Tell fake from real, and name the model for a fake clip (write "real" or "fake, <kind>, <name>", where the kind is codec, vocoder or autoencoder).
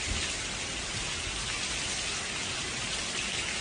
real